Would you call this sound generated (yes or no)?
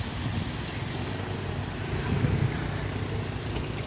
no